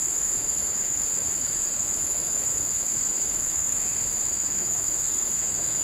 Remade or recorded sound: remade